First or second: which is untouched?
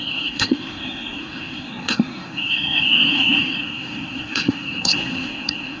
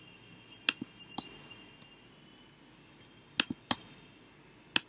second